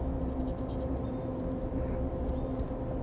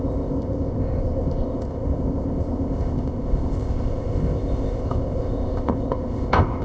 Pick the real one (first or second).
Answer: first